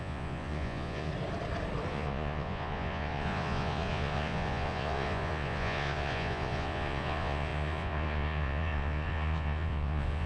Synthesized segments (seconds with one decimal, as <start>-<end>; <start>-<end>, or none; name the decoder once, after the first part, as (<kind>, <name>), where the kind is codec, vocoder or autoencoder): 0.0-1.1 (vocoder, Vocos); 1.9-10.3